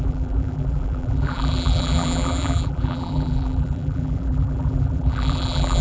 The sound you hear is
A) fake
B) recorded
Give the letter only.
A